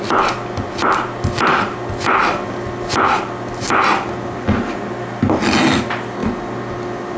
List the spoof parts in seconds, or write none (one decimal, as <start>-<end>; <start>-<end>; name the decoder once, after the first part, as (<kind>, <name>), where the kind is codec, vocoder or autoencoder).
none